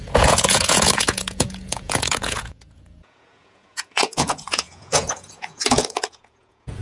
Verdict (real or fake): fake